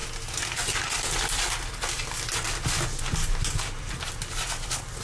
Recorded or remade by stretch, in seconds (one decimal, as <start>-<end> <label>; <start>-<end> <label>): 0.0-5.0 recorded